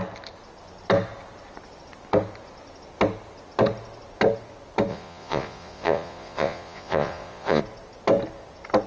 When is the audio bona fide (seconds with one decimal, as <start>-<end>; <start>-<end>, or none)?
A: 0.0-4.9; 7.6-8.9